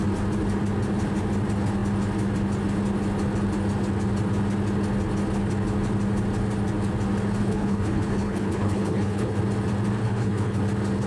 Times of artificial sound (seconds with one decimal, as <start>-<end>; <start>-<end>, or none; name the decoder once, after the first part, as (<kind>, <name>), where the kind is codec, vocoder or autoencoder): 7.4-9.4 (codec, HILCodec); 10.0-10.6